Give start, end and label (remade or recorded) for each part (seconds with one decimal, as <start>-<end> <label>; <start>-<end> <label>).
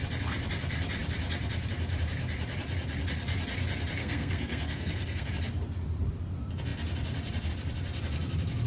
0.0-4.0 recorded; 4.0-5.3 remade; 5.3-8.7 recorded